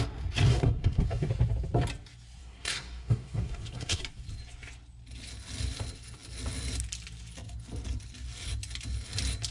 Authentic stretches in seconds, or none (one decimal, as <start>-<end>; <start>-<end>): 0.0-0.5; 1.3-2.4; 4.0-9.5